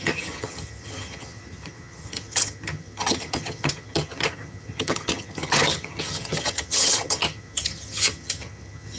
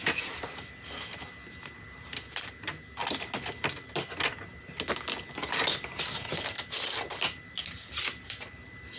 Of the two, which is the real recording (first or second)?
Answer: second